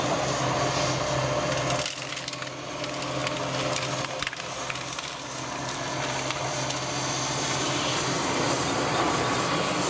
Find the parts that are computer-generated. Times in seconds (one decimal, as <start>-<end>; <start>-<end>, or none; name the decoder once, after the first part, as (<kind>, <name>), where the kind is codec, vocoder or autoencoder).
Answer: none